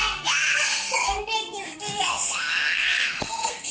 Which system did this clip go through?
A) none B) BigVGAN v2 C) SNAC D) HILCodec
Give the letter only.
C